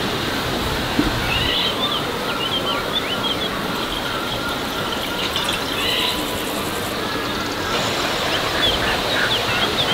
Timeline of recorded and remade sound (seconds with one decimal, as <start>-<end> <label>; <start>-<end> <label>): 0.0-9.9 recorded